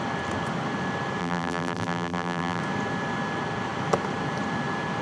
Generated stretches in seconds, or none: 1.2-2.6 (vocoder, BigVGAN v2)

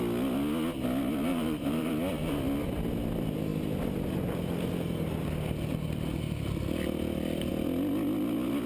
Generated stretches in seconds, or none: 1.3-1.9 (vocoder, BigVGAN v2)

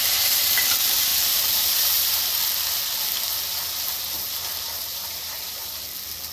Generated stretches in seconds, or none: 1.1-2.2 (vocoder, BigVGAN v2); 4.9-5.8

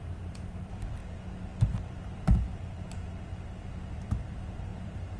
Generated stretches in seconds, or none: 0.0-1.0 (vocoder, BigVGAN v2); 3.9-5.2

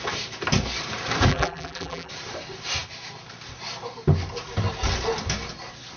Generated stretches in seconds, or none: 1.3-2.1 (vocoder, BigVGAN v2)

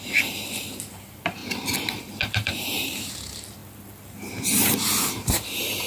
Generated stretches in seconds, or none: 0.0-3.6 (vocoder, BigVGAN v2); 5.1-5.9

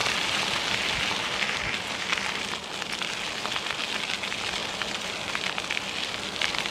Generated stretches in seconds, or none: none

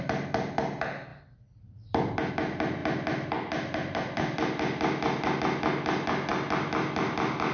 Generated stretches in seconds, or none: none